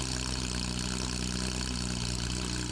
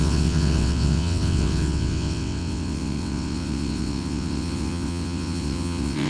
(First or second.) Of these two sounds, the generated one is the second